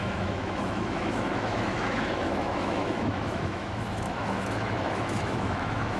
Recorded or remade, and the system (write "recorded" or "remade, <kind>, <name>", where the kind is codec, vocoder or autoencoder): remade, autoencoder, DAC-VAE